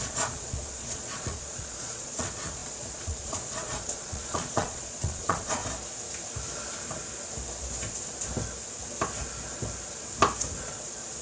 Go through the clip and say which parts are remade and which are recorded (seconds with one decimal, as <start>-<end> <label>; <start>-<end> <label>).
0.0-5.6 remade; 5.6-10.6 recorded; 10.6-11.2 remade